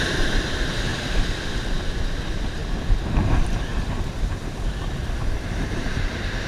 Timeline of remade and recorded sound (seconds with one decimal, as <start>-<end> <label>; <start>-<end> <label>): 0.0-0.9 remade; 0.9-1.9 recorded; 1.9-2.6 remade; 2.6-3.3 recorded; 3.3-6.5 remade